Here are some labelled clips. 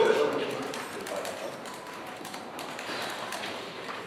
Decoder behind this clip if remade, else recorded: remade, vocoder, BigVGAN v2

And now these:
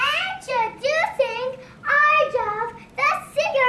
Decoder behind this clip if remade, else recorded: recorded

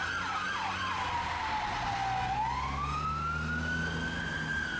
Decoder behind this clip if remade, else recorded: recorded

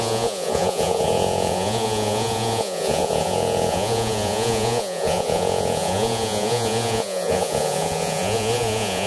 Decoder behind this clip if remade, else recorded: remade, vocoder, Vocos